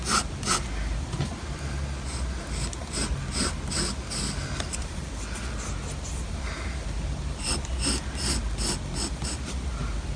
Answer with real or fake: real